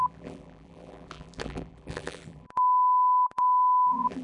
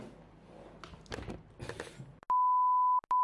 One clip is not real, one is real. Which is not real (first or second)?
first